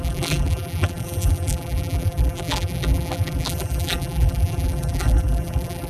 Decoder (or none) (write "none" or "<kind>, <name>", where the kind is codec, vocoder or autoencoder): vocoder, BigVGAN v2